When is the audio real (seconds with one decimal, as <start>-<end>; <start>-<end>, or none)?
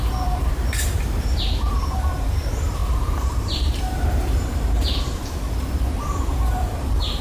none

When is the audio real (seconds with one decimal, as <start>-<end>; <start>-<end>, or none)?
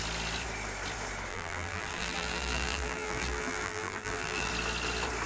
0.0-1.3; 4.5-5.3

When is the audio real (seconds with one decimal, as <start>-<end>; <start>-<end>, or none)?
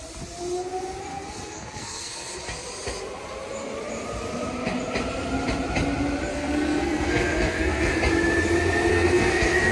0.0-1.1; 2.4-6.3; 8.0-8.9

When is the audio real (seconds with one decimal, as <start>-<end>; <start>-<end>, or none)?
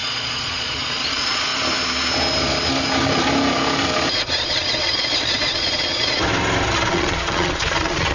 1.5-4.2; 6.2-6.9